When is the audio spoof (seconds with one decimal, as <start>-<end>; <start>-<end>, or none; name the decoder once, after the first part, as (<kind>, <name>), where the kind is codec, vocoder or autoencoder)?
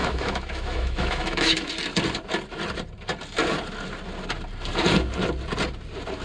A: 0.0-1.7 (autoencoder, DAC-VAE)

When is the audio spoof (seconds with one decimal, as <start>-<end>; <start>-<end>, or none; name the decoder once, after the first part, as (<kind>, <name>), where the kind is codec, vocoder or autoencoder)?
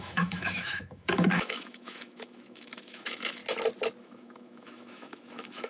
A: 0.0-3.4 (autoencoder, DAC-VAE); 4.0-5.7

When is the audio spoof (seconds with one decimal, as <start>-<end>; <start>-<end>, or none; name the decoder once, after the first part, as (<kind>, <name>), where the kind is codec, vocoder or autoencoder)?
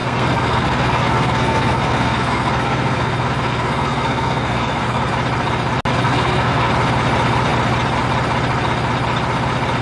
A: 0.0-5.1 (codec, SNAC); 5.9-6.7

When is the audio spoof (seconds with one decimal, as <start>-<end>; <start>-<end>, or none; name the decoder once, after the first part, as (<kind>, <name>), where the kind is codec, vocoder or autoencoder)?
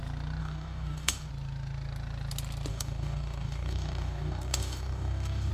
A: 0.4-1.3 (codec, DAC); 2.7-5.5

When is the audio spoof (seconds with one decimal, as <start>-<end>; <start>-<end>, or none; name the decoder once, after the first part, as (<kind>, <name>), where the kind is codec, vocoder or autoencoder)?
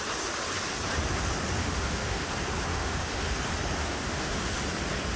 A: 1.6-2.3 (autoencoder, DAC-VAE); 2.7-3.3; 3.8-4.5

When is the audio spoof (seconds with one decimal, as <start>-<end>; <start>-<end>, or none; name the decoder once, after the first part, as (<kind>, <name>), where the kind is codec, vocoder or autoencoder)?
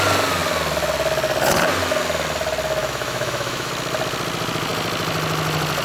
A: 2.8-3.7 (autoencoder, DAC-VAE)